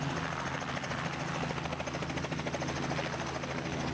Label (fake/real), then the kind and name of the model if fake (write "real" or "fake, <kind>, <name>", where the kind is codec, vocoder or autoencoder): real